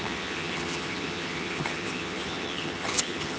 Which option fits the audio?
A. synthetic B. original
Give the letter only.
A